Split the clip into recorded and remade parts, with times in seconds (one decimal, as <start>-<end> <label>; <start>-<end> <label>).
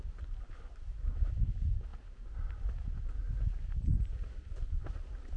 0.0-5.4 recorded